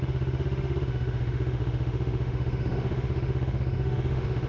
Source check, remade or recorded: remade